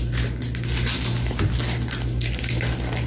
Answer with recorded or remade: recorded